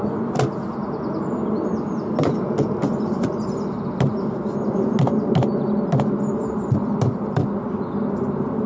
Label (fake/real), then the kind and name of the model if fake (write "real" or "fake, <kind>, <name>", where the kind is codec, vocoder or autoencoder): real